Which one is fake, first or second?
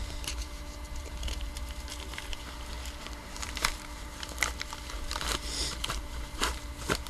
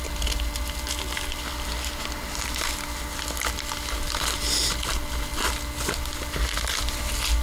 first